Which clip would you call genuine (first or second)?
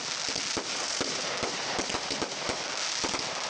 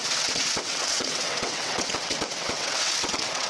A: first